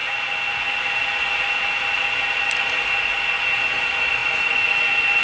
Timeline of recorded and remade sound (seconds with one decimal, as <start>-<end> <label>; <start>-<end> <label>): 0.0-5.2 recorded